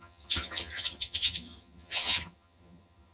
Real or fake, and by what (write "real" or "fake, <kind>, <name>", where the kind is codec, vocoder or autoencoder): fake, vocoder, HiFi-GAN